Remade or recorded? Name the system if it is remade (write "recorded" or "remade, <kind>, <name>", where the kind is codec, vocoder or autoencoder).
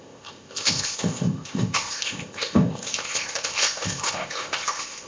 remade, codec, ZipCodec